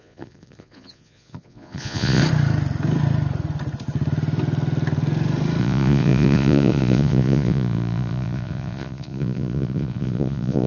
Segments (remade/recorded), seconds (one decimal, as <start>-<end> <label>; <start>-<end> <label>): 0.0-2.2 remade; 2.2-5.6 recorded; 5.6-10.7 remade